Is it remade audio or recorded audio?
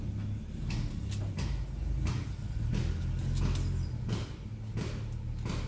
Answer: recorded